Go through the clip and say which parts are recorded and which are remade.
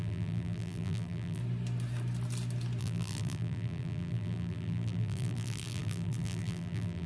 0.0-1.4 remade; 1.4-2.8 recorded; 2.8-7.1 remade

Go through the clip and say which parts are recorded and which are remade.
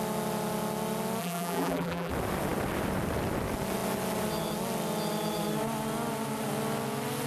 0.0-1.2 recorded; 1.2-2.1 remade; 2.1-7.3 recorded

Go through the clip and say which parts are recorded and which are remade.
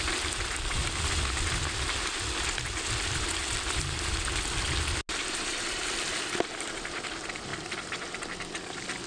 0.0-9.1 recorded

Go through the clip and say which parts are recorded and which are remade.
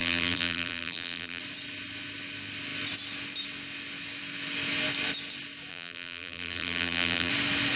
0.0-1.4 remade; 1.4-5.7 recorded; 5.7-7.3 remade; 7.3-7.8 recorded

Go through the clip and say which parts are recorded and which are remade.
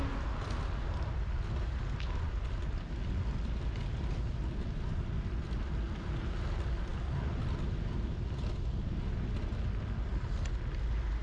0.0-11.2 recorded